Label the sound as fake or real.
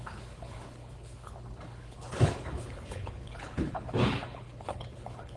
fake